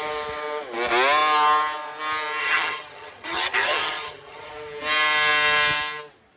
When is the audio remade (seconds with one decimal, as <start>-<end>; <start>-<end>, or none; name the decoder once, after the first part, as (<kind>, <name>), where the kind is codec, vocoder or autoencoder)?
2.4-4.5 (vocoder, HiFi-GAN)